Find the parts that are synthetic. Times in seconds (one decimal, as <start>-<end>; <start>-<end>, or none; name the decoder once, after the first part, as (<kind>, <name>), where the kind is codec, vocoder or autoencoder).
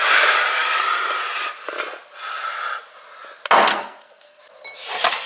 3.7-4.4 (codec, SNAC)